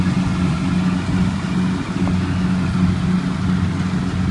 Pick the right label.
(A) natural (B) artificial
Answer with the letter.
A